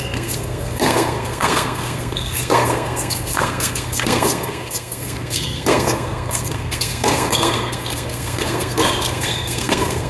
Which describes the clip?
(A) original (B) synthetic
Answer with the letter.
B